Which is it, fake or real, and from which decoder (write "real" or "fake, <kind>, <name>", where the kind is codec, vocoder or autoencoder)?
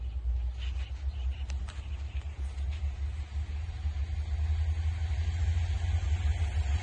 real